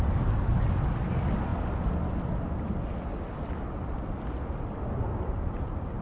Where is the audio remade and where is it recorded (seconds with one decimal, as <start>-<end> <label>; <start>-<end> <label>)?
0.0-6.0 recorded

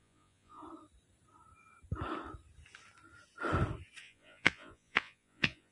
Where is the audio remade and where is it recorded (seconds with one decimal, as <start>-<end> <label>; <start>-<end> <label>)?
0.0-0.6 remade; 0.6-4.0 recorded; 4.0-5.7 remade

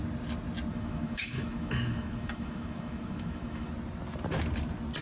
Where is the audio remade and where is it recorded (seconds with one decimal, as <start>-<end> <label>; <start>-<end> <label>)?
0.0-0.7 recorded; 0.7-3.7 remade; 3.7-5.0 recorded

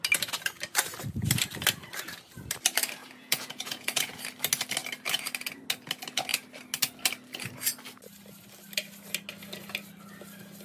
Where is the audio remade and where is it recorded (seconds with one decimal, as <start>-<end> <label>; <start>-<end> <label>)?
0.0-3.0 recorded; 3.0-4.2 remade; 4.2-10.6 recorded

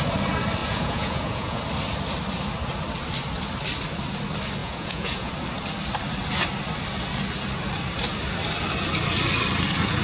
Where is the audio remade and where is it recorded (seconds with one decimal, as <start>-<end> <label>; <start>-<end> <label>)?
0.0-0.6 recorded; 0.6-1.6 remade; 1.6-4.6 recorded; 4.6-5.3 remade; 5.3-10.0 recorded

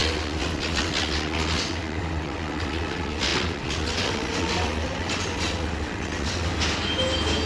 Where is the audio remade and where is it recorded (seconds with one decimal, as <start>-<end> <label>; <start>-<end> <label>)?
0.0-6.5 remade; 6.5-7.5 recorded

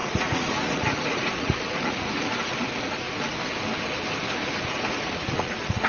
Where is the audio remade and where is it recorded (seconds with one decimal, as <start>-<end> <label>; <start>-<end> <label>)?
0.0-3.4 remade; 3.4-4.2 recorded; 4.2-5.9 remade

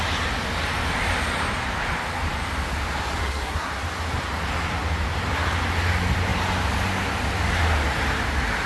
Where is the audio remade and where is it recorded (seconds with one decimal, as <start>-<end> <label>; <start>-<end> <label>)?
0.0-3.2 recorded; 3.2-3.7 remade; 3.7-8.7 recorded